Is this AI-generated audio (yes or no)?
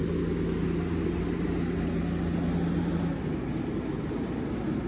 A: no